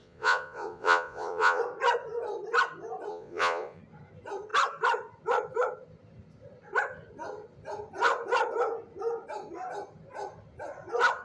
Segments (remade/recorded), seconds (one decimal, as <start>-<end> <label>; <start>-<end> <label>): 0.0-1.6 remade; 1.6-3.1 recorded; 3.1-3.8 remade; 3.8-11.2 recorded

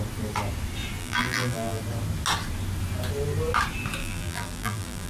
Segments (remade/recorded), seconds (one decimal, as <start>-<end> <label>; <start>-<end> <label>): 0.0-1.0 recorded; 1.0-1.8 remade; 1.8-4.0 recorded; 4.0-5.1 remade

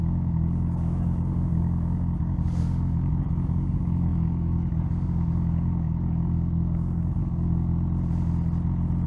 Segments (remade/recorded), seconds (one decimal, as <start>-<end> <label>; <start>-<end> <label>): 0.0-7.7 remade; 7.7-9.1 recorded

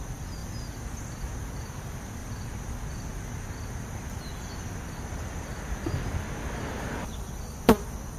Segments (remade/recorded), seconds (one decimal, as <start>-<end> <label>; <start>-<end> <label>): 0.0-0.4 remade; 0.4-1.3 recorded; 1.3-2.2 remade; 2.2-7.1 recorded; 7.1-8.2 remade

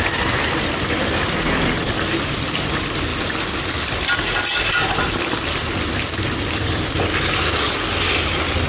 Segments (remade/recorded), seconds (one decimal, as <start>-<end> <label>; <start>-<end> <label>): 0.0-8.7 recorded

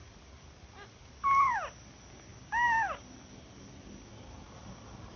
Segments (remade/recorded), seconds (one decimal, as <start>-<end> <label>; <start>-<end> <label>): 0.0-5.2 recorded

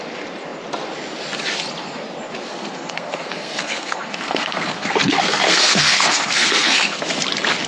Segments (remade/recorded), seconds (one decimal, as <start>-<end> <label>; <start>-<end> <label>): 0.0-2.5 recorded; 2.5-7.0 remade; 7.0-7.7 recorded